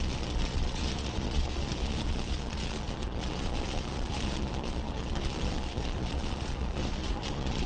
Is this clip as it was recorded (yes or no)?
no